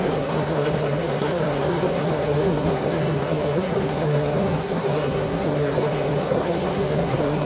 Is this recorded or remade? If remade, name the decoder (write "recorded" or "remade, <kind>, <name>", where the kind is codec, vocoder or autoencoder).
remade, codec, SNAC